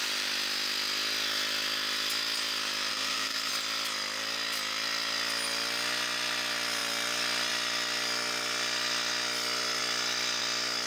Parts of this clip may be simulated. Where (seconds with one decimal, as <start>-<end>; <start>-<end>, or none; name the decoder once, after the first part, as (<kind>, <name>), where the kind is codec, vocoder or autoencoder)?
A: 2.9-3.5 (codec, SNAC)